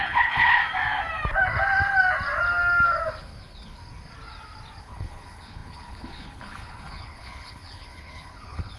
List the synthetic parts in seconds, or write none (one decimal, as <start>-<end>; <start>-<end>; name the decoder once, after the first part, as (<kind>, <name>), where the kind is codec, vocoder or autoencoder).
0.0-0.6 (codec, HILCodec); 3.2-3.8; 4.8-8.8